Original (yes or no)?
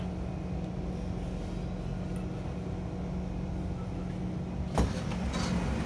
yes